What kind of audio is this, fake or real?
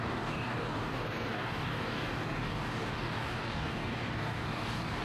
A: fake